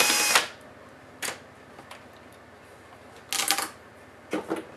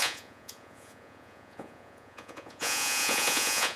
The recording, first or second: first